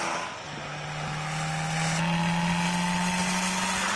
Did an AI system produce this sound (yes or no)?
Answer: no